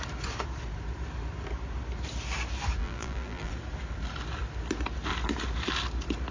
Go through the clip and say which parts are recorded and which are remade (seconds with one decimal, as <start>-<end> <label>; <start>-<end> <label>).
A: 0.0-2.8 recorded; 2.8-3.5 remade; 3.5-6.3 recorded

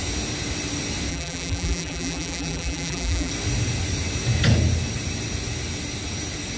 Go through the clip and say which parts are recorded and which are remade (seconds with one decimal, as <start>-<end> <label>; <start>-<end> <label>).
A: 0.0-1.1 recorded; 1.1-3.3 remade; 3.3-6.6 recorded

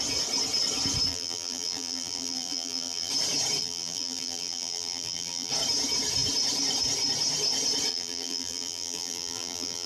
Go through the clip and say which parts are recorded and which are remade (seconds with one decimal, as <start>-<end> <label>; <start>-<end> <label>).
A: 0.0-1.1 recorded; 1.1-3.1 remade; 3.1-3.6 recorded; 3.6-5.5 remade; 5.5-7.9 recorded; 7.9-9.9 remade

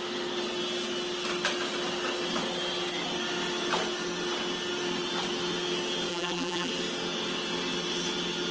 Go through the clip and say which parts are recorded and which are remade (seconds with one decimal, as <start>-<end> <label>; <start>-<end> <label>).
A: 0.0-6.1 recorded; 6.1-6.7 remade; 6.7-8.5 recorded